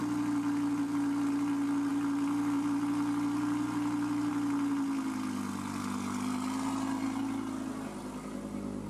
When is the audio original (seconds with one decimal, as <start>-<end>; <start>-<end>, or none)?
0.0-8.9